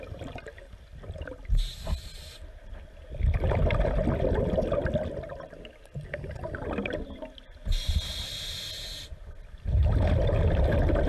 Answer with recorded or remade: recorded